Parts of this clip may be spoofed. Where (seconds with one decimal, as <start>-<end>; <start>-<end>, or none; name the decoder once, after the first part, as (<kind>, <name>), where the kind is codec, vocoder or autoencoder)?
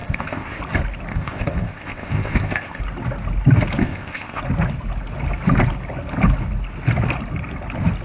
0.0-0.6 (codec, ZipCodec); 1.1-2.8; 3.8-4.4